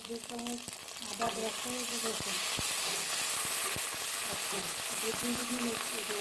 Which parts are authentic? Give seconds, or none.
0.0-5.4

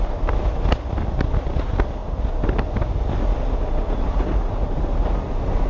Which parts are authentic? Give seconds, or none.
0.0-5.7

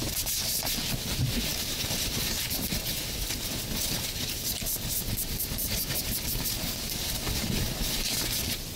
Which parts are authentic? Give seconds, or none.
0.0-8.8

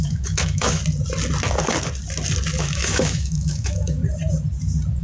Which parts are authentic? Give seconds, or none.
0.8-2.6; 4.0-5.0

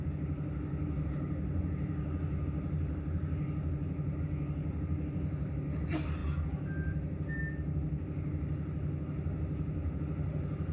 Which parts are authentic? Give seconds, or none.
0.0-10.7

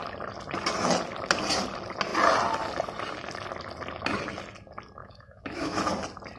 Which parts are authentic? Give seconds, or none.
0.0-5.0; 5.8-6.4

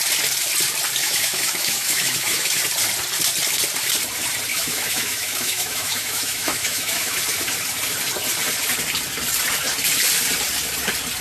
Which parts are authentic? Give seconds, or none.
0.0-1.0; 2.6-4.5; 7.2-11.2

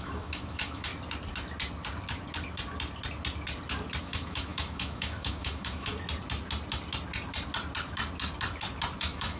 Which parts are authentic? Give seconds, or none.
0.9-4.0; 5.9-9.0